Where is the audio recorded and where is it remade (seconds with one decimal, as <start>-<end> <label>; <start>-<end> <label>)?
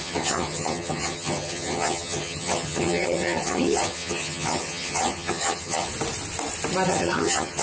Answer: 0.0-5.9 remade; 5.9-6.9 recorded; 6.9-7.6 remade